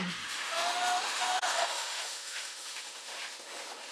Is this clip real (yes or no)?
no